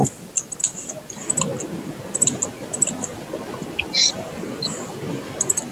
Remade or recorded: recorded